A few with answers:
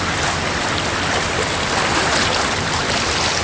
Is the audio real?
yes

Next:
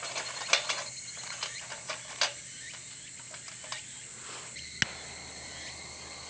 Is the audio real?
yes